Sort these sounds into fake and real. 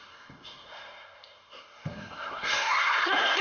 fake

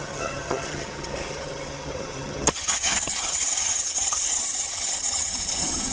fake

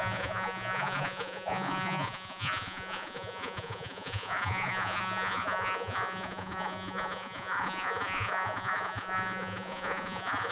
fake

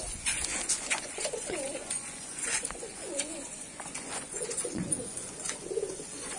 fake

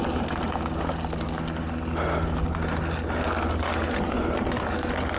real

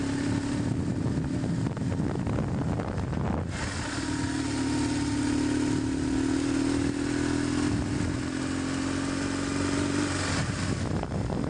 real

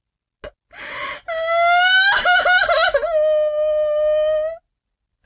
real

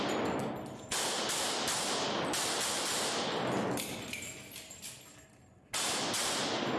real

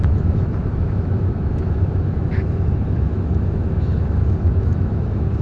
fake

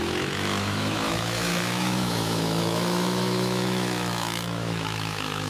fake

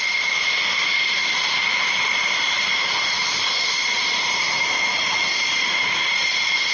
fake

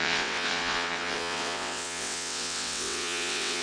fake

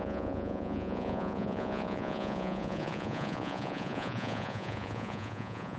fake